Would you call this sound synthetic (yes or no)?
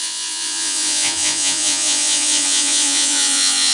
yes